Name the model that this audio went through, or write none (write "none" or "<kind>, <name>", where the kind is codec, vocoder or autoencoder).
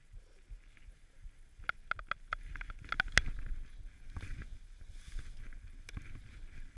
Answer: none